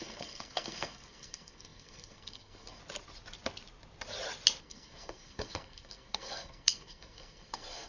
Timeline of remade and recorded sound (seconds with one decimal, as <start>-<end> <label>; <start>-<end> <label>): 0.0-2.8 remade; 2.8-4.6 recorded; 4.6-7.9 remade